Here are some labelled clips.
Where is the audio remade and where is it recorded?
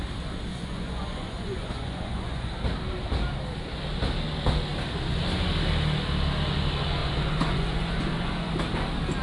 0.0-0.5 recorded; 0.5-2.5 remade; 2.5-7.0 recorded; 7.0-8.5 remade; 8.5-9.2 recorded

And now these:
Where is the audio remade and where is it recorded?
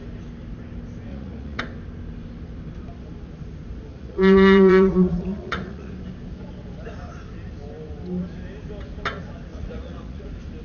0.0-1.1 recorded; 1.1-1.6 remade; 1.6-3.9 recorded; 3.9-5.9 remade; 5.9-9.5 recorded; 9.5-10.2 remade; 10.2-10.6 recorded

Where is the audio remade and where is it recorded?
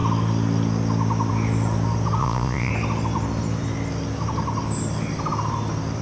0.0-2.2 recorded; 2.2-2.7 remade; 2.7-6.0 recorded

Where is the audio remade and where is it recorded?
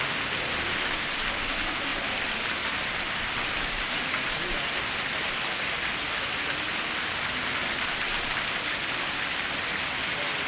0.0-10.5 recorded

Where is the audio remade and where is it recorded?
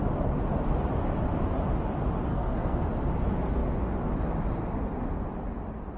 0.0-2.3 recorded; 2.3-2.9 remade; 2.9-6.0 recorded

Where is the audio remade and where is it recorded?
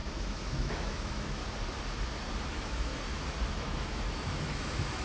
0.0-1.4 remade; 1.4-2.4 recorded; 2.4-2.9 remade; 2.9-3.5 recorded; 3.5-5.0 remade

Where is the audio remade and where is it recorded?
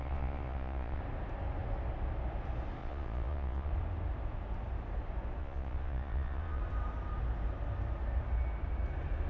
0.0-1.0 remade; 1.0-2.8 recorded; 2.8-3.7 remade; 3.7-5.4 recorded; 5.4-6.6 remade; 6.6-9.3 recorded